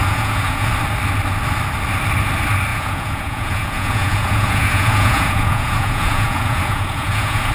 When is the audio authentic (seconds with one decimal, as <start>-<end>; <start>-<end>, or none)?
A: 0.7-2.7